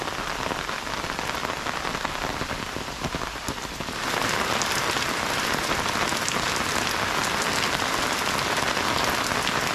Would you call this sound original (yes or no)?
yes